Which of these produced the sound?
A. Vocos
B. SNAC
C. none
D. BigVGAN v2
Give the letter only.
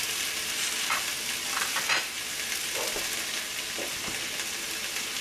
C